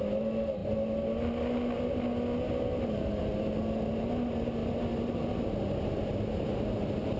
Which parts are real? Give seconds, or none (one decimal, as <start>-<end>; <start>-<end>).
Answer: 0.0-7.2